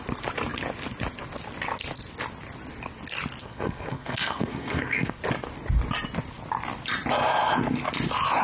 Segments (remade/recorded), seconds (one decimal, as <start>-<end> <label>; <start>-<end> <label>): 0.0-3.4 recorded; 3.4-5.2 remade; 5.2-8.4 recorded